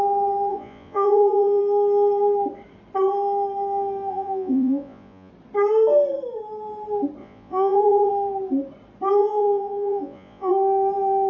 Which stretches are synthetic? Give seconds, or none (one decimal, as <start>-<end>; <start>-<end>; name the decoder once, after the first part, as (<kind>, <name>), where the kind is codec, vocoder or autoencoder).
0.5-1.6 (vocoder, Vocos); 4.1-5.3; 7.2-8.1; 9.2-10.5